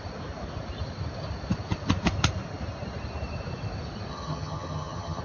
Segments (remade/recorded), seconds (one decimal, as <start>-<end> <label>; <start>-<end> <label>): 0.0-4.1 recorded; 4.1-5.2 remade